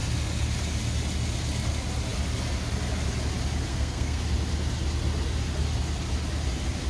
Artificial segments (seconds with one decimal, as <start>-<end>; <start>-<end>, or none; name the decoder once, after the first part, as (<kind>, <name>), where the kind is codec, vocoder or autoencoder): 3.7-4.2 (codec, SNAC)

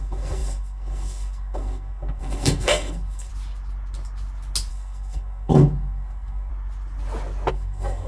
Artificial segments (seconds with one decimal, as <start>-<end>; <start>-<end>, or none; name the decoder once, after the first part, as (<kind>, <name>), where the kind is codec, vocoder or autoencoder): 0.0-3.3 (codec, SNAC); 4.7-6.5; 7.5-8.1

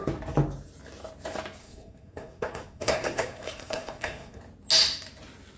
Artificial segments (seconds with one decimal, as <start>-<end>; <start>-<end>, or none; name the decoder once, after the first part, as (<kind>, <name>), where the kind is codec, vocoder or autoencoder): 1.6-4.4 (codec, SNAC)

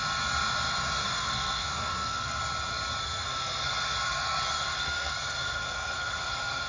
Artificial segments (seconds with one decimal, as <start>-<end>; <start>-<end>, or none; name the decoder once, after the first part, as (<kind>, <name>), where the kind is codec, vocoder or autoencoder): 1.0-2.4 (codec, SNAC); 3.0-6.7